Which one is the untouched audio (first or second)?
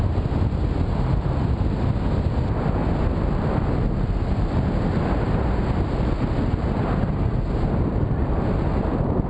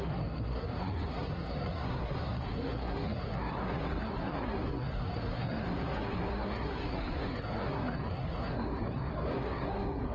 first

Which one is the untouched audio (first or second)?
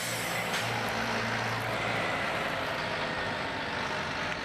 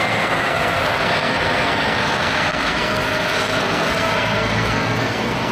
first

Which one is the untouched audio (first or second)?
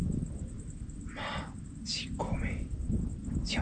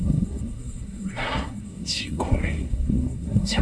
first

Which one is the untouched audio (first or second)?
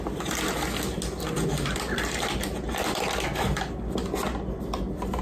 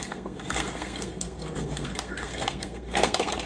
first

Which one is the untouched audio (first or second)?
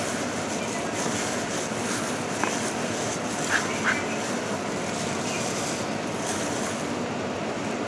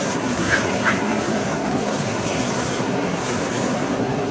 first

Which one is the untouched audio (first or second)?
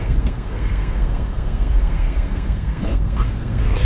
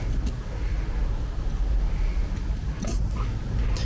second